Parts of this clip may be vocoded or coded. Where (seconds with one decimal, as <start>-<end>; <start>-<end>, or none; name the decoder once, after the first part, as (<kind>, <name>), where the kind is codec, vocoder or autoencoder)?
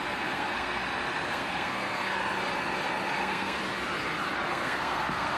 0.0-0.8 (codec, SNAC); 1.3-2.2; 3.2-3.6; 4.5-5.4